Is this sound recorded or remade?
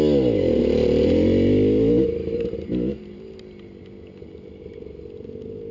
recorded